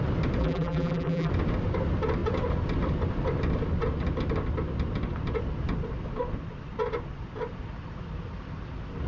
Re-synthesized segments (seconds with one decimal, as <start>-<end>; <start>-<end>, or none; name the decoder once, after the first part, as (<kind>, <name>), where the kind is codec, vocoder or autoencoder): 0.4-1.3 (vocoder, BigVGAN v2)